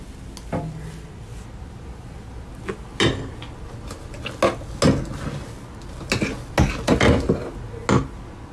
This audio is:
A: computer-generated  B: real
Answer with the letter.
B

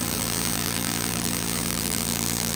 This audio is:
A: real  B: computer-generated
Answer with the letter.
B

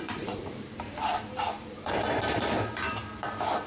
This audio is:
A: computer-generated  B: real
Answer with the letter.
A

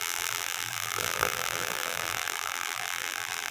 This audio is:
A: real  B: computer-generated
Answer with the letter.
B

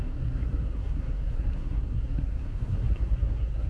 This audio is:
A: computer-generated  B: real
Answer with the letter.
A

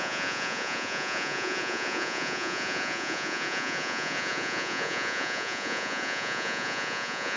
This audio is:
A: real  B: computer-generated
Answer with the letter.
B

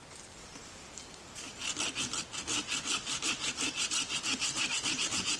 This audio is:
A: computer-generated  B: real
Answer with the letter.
B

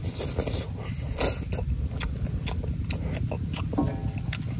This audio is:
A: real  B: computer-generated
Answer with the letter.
A